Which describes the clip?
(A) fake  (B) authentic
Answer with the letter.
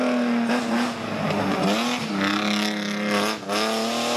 B